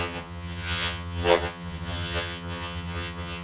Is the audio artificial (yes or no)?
yes